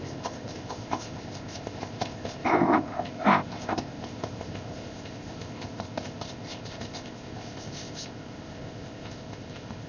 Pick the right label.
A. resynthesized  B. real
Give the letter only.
A